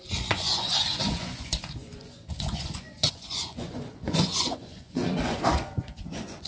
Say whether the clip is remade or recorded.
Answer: remade